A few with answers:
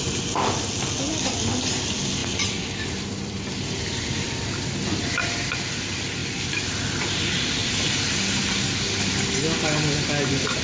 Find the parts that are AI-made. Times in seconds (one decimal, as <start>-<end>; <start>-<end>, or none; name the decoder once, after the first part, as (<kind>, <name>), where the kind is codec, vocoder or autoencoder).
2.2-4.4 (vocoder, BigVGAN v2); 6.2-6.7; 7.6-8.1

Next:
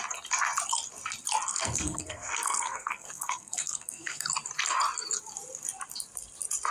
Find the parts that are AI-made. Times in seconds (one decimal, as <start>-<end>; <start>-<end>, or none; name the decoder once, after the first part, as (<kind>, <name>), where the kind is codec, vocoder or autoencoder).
1.5-4.3 (codec, SNAC)

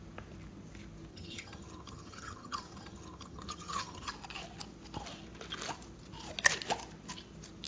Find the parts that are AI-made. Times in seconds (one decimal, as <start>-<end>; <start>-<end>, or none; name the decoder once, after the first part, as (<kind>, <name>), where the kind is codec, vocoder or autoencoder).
1.1-4.1 (vocoder, HiFi-GAN)

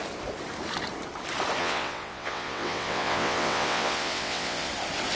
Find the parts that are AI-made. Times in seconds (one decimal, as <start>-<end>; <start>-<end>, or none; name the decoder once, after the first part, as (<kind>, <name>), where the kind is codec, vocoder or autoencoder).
1.6-4.7 (vocoder, WaveNeXt)